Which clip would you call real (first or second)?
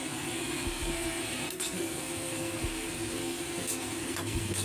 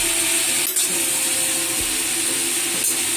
second